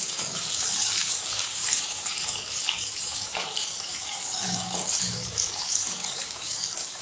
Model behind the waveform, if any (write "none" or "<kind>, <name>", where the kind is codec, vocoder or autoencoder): codec, DAC